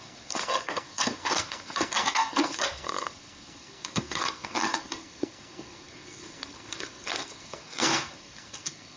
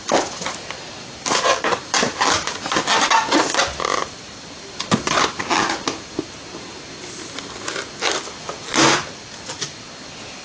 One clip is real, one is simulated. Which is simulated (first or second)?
first